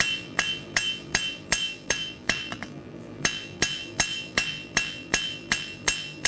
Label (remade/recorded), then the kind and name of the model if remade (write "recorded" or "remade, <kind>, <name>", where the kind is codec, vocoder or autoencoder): remade, vocoder, BigVGAN v2